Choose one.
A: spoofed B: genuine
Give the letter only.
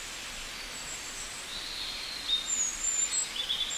B